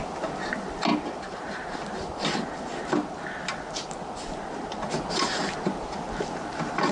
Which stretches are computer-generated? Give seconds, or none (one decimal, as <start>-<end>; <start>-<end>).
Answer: none